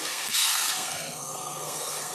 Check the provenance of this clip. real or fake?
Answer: fake